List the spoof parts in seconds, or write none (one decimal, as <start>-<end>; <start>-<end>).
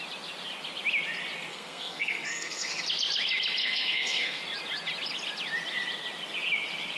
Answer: 1.5-2.8; 3.6-4.4